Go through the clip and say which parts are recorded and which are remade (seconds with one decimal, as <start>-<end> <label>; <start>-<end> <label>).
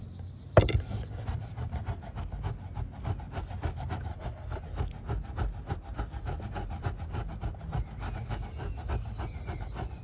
0.0-4.1 recorded; 4.1-4.6 remade; 4.6-10.0 recorded